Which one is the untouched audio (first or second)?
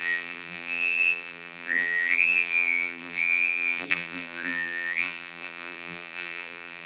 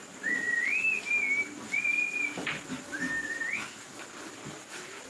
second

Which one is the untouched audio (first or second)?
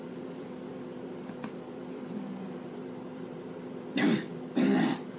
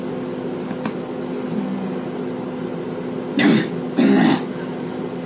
second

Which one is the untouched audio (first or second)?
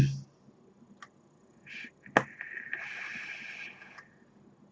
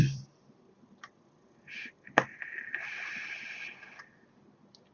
first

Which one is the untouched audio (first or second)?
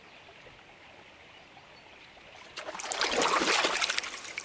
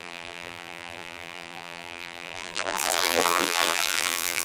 first